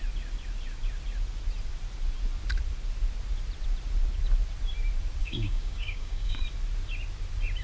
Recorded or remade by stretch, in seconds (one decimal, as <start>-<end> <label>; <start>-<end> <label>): 0.0-5.2 recorded; 5.2-6.4 remade; 6.4-7.6 recorded